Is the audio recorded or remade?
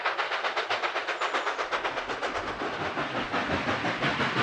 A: recorded